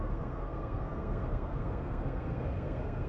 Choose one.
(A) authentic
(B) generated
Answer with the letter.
B